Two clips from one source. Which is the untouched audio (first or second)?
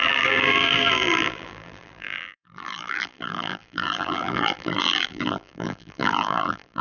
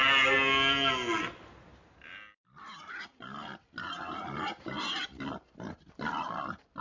second